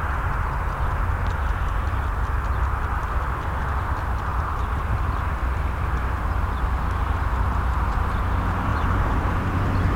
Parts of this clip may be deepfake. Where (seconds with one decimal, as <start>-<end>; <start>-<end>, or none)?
4.3-5.2; 8.7-9.4